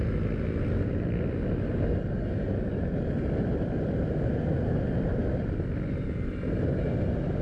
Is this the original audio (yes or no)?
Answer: yes